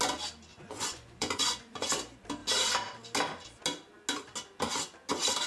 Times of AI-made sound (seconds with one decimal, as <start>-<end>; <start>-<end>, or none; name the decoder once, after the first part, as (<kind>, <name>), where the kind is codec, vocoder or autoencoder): 0.5-1.9 (vocoder, Vocos)